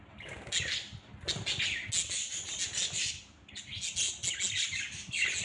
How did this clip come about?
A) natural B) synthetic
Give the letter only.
A